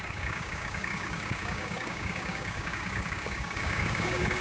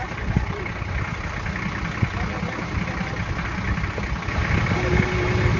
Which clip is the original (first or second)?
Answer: second